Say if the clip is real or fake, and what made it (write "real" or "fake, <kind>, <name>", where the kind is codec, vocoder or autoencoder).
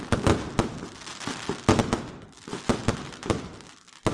real